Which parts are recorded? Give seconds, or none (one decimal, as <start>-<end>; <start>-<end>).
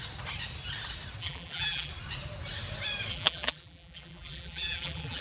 0.0-1.2; 1.9-3.1